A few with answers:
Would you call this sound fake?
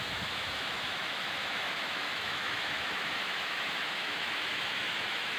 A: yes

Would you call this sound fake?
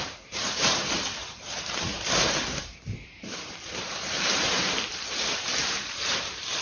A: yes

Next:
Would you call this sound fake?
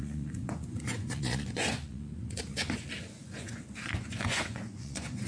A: yes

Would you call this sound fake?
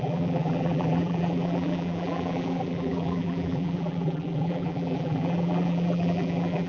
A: yes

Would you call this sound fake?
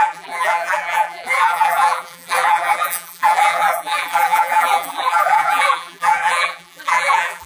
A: yes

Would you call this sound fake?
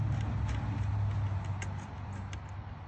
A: no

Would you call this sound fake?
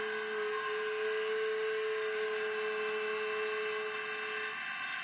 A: no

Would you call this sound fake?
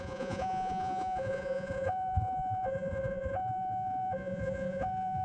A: yes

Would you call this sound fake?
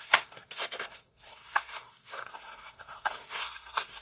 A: yes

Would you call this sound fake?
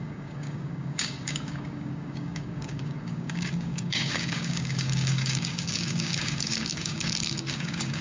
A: yes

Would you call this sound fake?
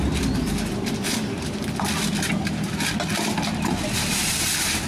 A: no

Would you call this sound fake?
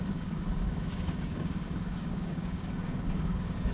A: yes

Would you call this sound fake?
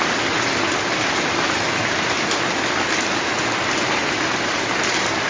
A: no